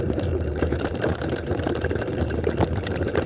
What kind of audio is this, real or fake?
fake